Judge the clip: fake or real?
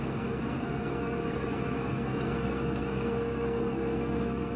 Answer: fake